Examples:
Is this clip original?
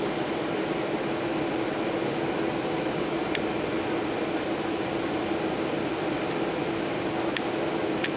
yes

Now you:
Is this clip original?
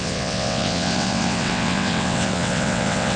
no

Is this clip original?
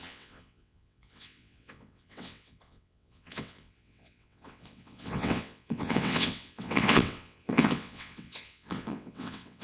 no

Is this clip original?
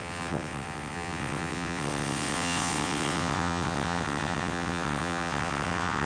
no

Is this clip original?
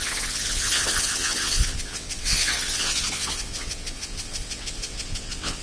no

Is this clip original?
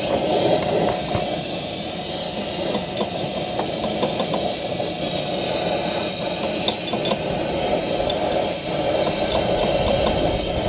yes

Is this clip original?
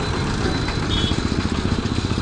yes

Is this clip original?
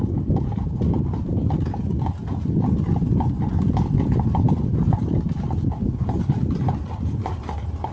yes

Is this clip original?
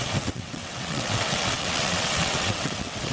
no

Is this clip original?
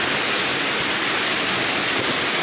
yes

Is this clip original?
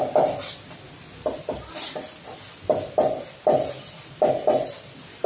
yes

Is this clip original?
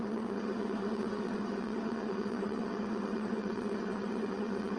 no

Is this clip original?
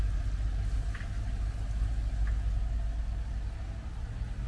yes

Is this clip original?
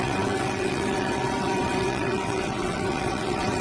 no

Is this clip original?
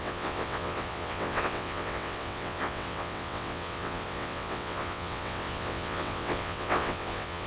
no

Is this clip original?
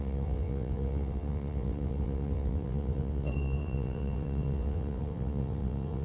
no